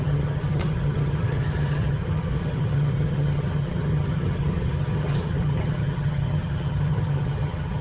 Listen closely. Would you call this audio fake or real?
fake